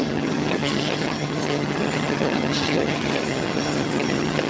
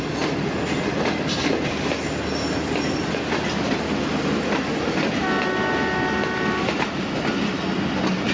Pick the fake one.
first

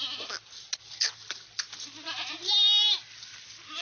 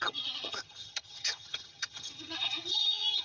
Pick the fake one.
second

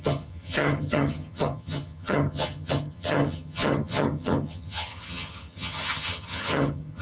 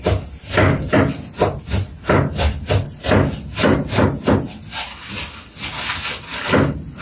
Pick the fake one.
first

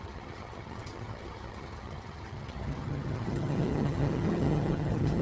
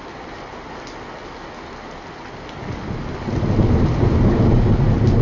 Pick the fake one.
first